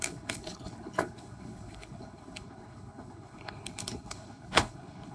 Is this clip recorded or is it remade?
remade